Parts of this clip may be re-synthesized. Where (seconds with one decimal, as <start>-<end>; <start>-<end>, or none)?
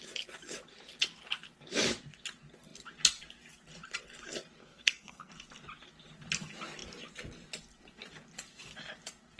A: 4.6-5.3